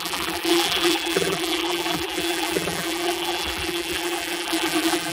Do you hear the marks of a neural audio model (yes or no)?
yes